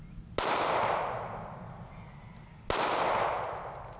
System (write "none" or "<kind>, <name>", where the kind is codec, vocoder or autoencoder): none